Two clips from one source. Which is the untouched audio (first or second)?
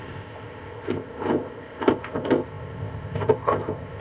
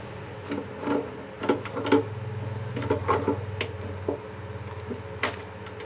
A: second